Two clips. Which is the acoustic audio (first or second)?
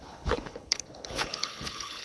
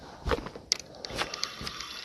second